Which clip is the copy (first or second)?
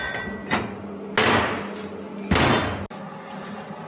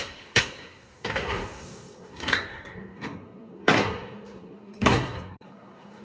second